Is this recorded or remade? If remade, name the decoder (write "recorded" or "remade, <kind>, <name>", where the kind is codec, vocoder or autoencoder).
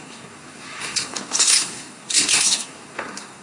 remade, codec, SNAC